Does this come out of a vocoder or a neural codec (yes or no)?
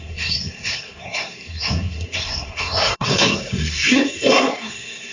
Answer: yes